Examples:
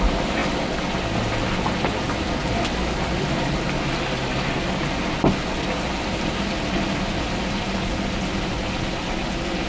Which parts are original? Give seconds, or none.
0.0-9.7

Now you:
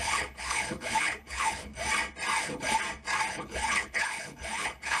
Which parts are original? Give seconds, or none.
1.7-2.4; 2.8-3.3